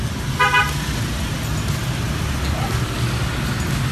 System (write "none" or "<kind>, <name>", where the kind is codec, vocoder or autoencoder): none